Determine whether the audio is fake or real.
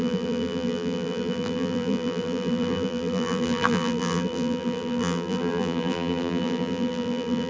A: fake